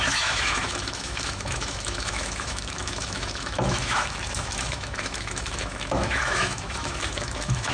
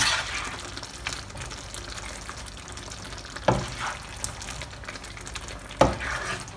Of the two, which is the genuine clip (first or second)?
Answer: second